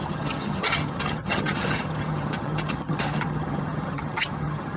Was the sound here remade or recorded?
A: remade